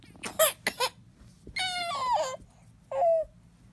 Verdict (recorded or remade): recorded